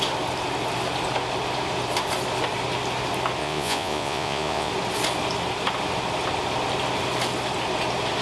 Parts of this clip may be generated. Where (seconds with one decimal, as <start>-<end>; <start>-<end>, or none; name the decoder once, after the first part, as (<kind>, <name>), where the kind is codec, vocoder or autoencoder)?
3.4-4.7 (vocoder, Vocos)